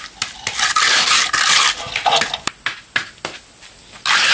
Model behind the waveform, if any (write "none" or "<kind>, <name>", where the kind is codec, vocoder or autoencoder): none